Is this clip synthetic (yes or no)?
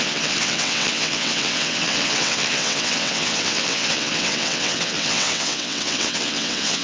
yes